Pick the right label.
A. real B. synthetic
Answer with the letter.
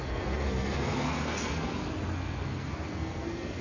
B